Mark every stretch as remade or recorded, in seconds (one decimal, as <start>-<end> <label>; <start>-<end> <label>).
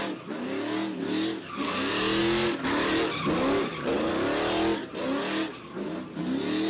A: 0.0-6.7 recorded